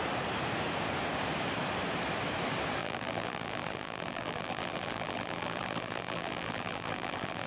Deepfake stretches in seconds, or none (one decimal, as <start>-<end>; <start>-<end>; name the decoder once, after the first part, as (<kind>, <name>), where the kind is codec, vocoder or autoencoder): 2.8-7.5 (vocoder, BigVGAN v2)